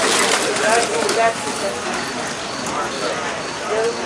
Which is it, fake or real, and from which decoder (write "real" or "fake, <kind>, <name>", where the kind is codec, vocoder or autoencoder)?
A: real